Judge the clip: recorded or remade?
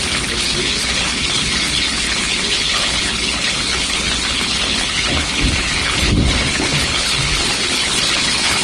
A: remade